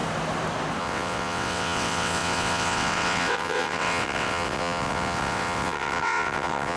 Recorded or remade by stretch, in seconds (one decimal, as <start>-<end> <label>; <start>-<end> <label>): 0.0-0.8 recorded; 0.8-6.8 remade